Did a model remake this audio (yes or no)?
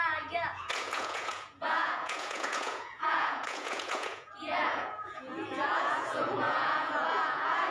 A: yes